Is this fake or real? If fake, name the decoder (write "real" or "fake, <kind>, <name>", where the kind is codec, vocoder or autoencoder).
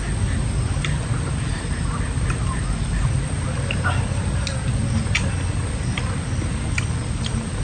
real